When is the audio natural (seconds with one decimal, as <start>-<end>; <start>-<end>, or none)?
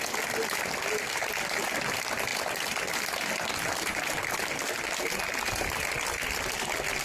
0.0-7.0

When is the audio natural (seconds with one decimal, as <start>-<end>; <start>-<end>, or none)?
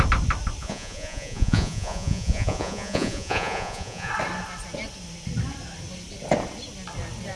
0.0-0.6; 4.1-7.4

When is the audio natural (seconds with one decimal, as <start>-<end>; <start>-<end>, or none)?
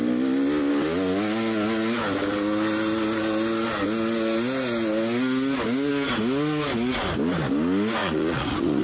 0.0-8.0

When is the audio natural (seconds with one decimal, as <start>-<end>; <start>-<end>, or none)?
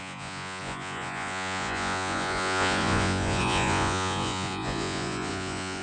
none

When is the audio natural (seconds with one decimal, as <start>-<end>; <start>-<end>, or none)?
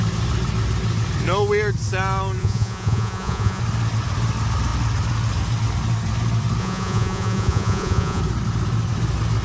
0.0-2.4; 3.6-6.6; 8.2-9.4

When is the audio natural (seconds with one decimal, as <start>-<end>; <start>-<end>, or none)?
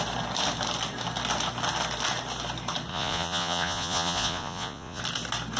0.0-2.9; 5.0-5.6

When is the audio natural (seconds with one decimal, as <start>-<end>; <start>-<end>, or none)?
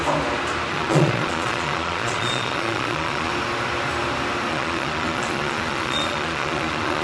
0.0-0.7; 3.3-4.5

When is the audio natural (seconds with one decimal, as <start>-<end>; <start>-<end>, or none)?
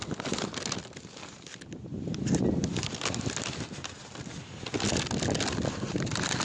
0.0-6.4